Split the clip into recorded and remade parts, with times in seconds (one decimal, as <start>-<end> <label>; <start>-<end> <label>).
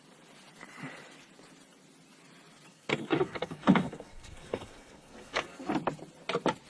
0.0-2.7 recorded; 2.7-5.7 remade; 5.7-6.7 recorded